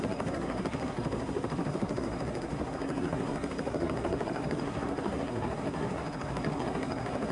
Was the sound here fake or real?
fake